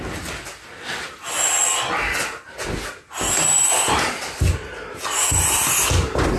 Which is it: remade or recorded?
recorded